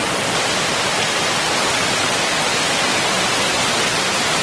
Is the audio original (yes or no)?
yes